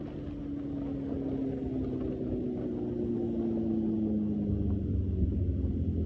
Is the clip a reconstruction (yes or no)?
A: no